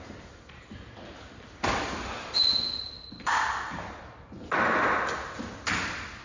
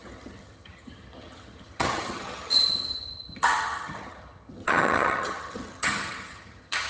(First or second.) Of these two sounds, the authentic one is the first